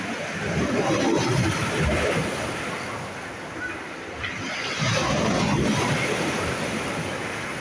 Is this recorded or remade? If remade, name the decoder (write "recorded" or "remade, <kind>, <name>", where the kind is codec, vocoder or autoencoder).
recorded